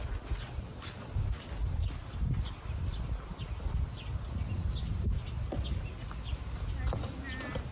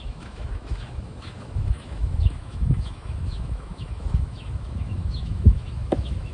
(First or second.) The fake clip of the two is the second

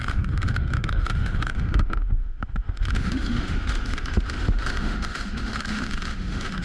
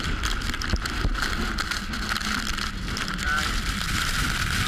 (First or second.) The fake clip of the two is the first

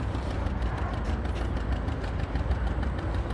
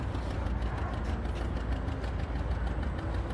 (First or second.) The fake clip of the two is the first